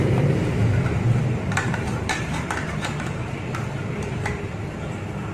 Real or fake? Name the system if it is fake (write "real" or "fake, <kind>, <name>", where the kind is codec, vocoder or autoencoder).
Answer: fake, vocoder, BigVGAN v2